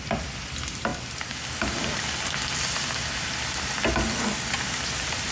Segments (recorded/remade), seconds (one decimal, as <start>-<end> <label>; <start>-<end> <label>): 0.0-5.3 recorded